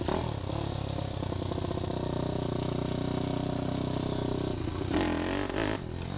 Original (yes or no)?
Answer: yes